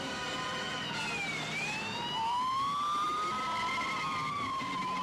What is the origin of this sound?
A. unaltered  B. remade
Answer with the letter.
B